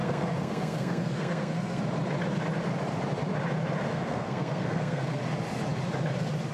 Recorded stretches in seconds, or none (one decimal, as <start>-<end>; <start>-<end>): 1.8-3.9; 5.2-6.5